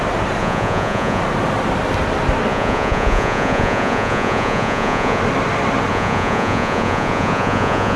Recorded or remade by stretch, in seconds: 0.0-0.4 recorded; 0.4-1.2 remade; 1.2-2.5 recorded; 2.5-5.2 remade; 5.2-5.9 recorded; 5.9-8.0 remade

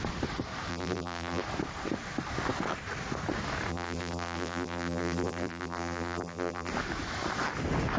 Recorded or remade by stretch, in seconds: 0.0-0.7 recorded; 0.7-1.4 remade; 1.4-3.7 recorded; 3.7-6.7 remade; 6.7-8.0 recorded

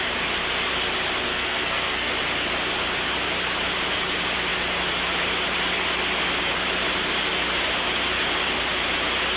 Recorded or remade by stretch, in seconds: 0.0-1.3 recorded; 1.3-2.1 remade; 2.1-9.4 recorded